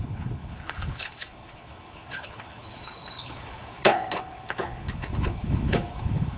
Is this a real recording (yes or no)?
no